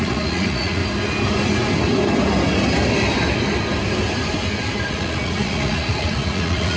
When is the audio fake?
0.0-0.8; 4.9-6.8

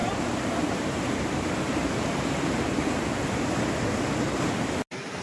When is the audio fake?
0.0-2.8

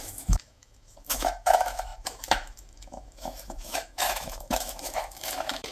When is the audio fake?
0.0-5.7

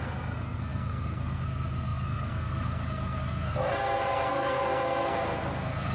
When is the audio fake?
0.0-5.9

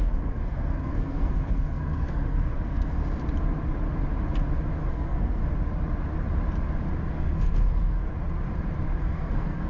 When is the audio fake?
0.0-3.0; 4.9-5.4; 7.1-8.1; 9.0-9.7

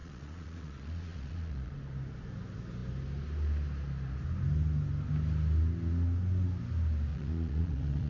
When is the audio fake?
0.0-1.7; 7.1-8.1

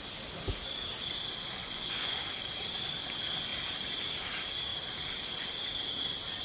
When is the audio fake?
1.6-2.2

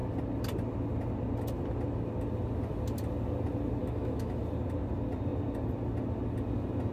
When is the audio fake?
3.8-4.4